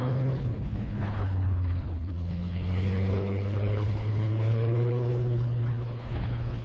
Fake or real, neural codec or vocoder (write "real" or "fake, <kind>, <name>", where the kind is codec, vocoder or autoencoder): fake, codec, HILCodec